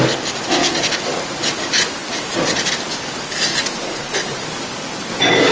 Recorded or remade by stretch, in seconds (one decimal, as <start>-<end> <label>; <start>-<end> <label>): 0.0-3.5 recorded; 3.5-4.4 remade; 4.4-5.5 recorded

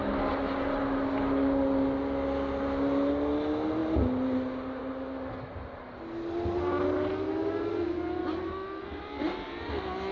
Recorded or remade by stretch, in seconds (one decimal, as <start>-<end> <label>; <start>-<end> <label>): 0.0-10.1 recorded